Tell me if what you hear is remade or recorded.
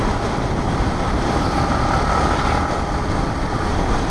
recorded